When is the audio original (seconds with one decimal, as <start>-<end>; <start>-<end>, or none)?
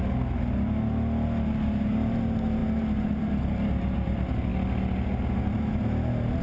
0.0-6.4